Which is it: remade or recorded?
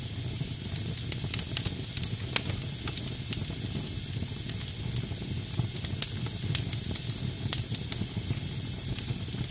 recorded